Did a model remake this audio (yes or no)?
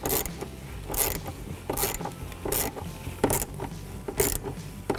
no